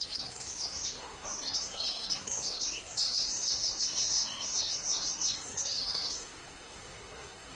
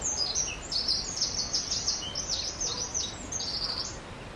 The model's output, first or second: first